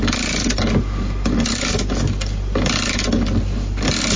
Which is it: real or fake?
real